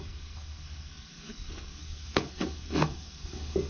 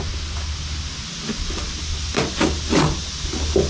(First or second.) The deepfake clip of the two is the first